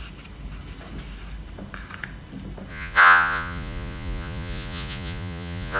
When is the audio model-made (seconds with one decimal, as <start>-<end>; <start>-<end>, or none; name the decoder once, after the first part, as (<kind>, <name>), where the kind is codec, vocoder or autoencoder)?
2.7-5.8 (vocoder, Vocos)